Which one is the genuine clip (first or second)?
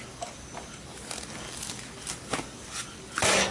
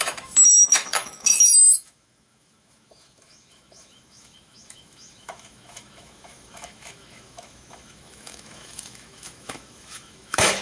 first